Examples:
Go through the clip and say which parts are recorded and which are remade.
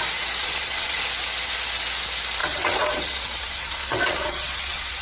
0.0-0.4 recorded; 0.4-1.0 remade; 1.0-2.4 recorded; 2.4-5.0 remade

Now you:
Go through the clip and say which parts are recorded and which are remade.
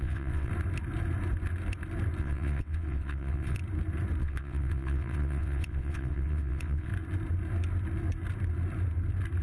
0.0-0.5 remade; 0.5-2.2 recorded; 2.2-3.6 remade; 3.6-4.2 recorded; 4.2-6.9 remade; 6.9-9.4 recorded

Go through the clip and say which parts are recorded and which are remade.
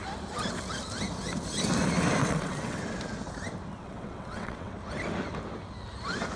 0.0-2.2 recorded; 2.2-2.8 remade; 2.8-3.7 recorded; 3.7-4.7 remade; 4.7-6.4 recorded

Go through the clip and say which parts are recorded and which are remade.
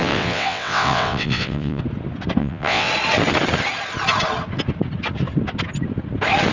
0.0-1.8 remade; 1.8-2.4 recorded; 2.4-2.9 remade; 2.9-6.5 recorded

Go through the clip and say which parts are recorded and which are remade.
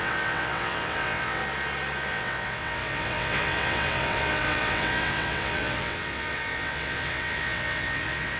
0.0-1.4 remade; 1.4-2.1 recorded; 2.1-8.4 remade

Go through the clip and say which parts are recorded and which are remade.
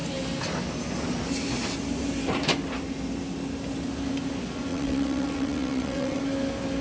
0.0-4.7 recorded; 4.7-6.2 remade; 6.2-6.8 recorded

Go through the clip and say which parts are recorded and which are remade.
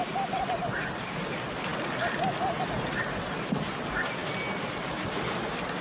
0.0-5.8 recorded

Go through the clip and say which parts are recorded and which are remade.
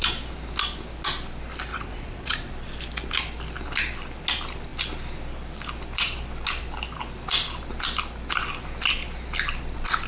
0.0-1.7 recorded; 1.7-2.5 remade; 2.5-10.1 recorded